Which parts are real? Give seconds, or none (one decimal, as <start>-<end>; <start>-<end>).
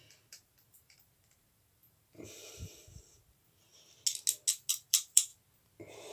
3.7-4.7; 5.3-6.1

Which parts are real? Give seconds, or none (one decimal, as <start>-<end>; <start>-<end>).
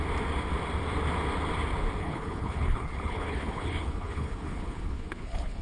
0.0-2.0